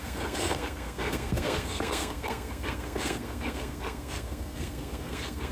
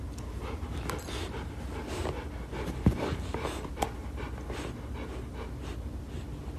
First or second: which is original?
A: second